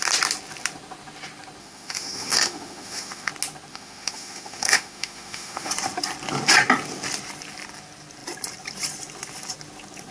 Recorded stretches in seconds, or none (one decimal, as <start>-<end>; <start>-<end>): 0.0-1.6; 3.3-3.7; 5.7-10.1